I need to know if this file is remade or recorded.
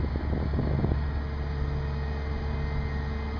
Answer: recorded